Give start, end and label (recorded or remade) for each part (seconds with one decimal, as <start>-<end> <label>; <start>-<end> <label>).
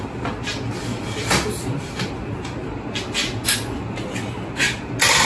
0.0-5.2 recorded